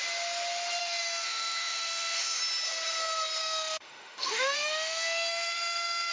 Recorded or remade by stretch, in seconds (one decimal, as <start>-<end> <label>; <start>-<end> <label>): 0.0-0.8 recorded; 0.8-2.4 remade; 2.4-3.4 recorded; 3.4-6.1 remade